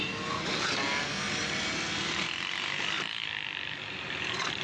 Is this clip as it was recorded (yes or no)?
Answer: yes